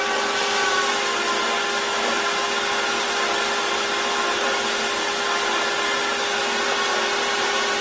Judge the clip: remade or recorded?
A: recorded